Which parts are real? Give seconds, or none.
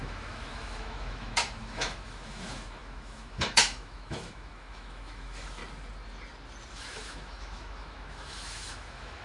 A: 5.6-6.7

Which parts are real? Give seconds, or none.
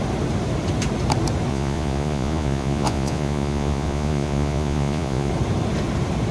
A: 0.0-1.5; 5.3-6.3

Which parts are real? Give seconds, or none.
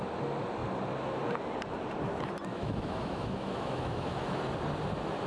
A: 0.0-2.5; 4.4-5.3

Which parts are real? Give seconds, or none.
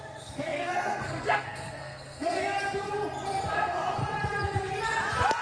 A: 2.4-3.5; 4.0-5.4